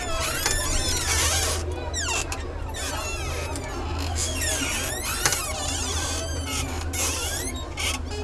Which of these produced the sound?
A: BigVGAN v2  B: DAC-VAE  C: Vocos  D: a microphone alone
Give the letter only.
D